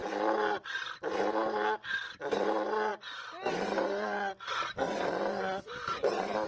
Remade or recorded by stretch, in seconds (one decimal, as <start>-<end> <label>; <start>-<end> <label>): 0.0-1.9 recorded; 1.9-6.5 remade